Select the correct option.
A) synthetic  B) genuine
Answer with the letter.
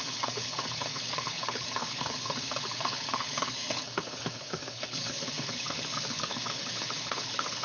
A